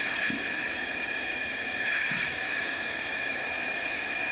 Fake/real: fake